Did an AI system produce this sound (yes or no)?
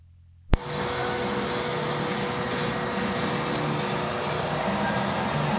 no